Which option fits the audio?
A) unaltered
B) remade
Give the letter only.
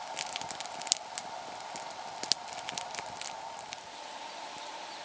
A